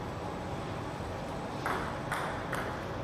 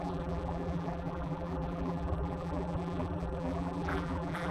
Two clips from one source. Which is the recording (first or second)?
first